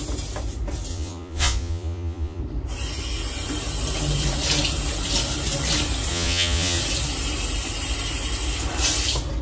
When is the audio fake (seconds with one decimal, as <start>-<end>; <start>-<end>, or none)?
0.9-2.4; 6.1-6.8